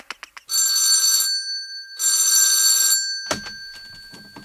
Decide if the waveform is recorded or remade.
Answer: recorded